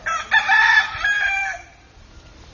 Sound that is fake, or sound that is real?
fake